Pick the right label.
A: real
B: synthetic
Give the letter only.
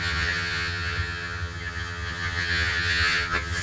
B